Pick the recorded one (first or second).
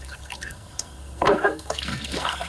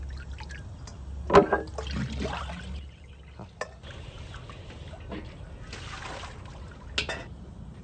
second